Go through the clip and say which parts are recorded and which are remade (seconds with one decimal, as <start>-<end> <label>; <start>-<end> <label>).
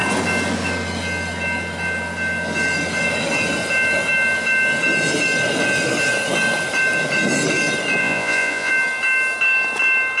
0.0-8.0 recorded; 8.0-8.7 remade; 8.7-10.2 recorded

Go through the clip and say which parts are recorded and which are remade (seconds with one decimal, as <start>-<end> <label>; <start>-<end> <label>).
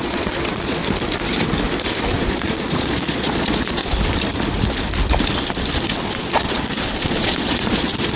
0.0-0.8 remade; 0.8-2.2 recorded; 2.2-3.8 remade; 3.8-6.1 recorded; 6.1-8.2 remade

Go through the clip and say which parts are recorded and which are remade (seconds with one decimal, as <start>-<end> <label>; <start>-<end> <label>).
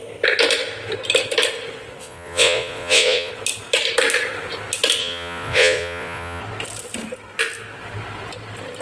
0.0-2.0 recorded; 2.0-3.3 remade; 3.3-5.0 recorded; 5.0-6.4 remade; 6.4-8.8 recorded